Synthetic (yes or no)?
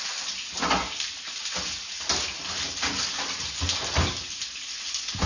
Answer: no